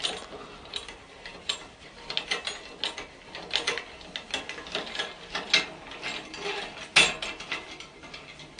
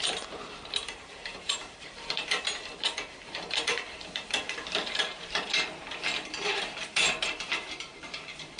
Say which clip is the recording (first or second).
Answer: first